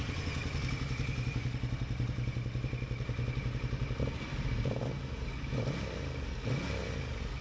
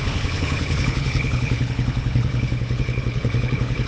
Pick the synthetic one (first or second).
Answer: second